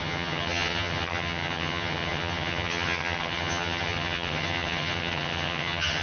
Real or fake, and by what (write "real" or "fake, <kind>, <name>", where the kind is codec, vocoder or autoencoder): fake, vocoder, HiFi-GAN